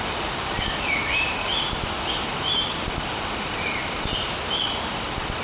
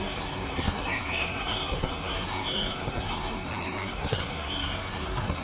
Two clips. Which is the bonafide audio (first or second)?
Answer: first